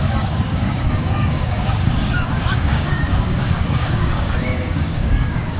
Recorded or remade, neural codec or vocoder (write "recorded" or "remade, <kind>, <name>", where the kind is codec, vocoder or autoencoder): remade, codec, DAC